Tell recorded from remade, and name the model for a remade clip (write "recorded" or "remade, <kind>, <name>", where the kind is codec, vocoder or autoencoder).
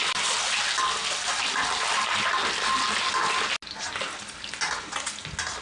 recorded